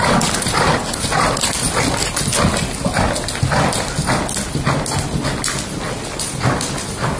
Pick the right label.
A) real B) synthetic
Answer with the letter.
A